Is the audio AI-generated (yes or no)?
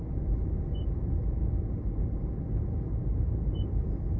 yes